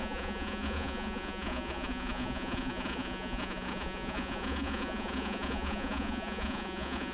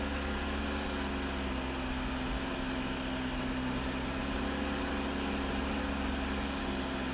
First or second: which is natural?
second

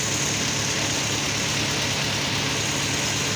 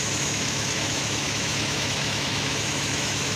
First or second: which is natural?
first